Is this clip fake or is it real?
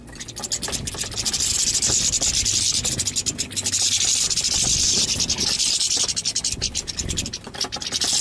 real